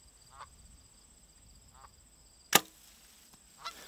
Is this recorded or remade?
recorded